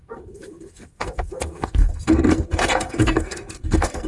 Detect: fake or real fake